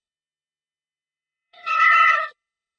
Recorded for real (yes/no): no